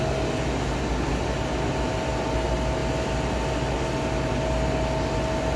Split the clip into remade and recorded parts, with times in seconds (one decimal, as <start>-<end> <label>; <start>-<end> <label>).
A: 0.0-5.6 recorded